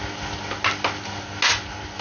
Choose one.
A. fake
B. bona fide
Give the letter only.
B